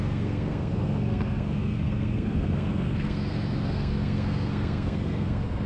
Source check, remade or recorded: remade